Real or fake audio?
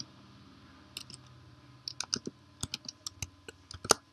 real